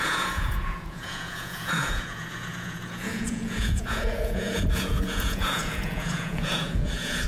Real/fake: fake